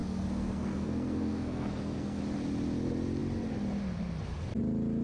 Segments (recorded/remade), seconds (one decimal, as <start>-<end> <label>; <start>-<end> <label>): 0.0-2.2 remade; 2.2-5.0 recorded